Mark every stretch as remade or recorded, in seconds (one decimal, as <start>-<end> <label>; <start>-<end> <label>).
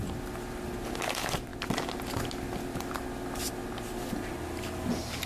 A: 0.0-5.3 recorded